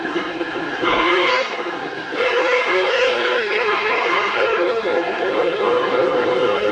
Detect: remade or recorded remade